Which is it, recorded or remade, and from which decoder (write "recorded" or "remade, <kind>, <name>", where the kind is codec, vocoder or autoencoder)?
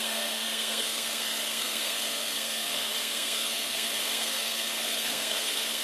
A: remade, codec, SNAC